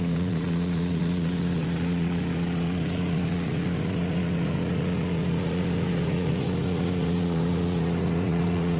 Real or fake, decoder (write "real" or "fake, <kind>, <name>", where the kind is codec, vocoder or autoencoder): fake, vocoder, Vocos